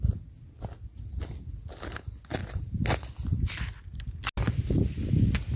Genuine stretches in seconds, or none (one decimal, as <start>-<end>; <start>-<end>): 0.0-5.6